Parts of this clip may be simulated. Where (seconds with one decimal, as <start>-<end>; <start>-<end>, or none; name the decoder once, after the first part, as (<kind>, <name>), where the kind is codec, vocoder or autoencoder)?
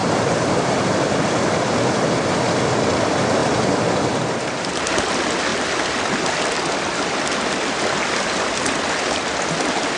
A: none